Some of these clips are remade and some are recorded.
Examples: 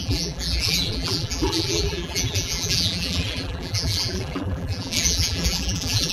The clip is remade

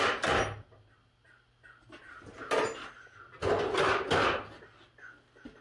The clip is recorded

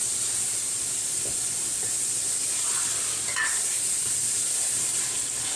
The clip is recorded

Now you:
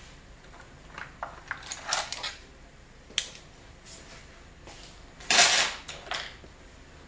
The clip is recorded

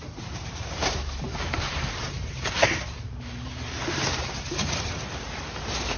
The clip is remade